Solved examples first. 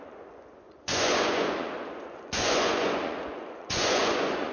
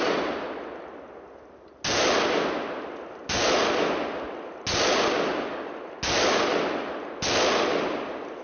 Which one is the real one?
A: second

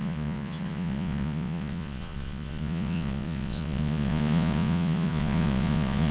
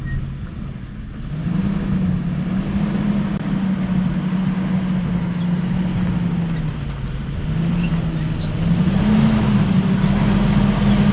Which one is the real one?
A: second